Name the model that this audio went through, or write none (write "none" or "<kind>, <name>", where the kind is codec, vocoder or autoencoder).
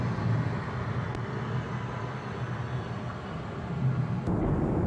none